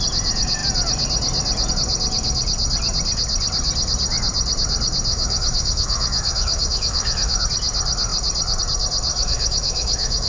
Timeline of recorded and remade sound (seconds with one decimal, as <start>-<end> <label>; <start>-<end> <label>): 0.0-5.1 recorded; 5.1-7.4 remade; 7.4-9.1 recorded; 9.1-10.3 remade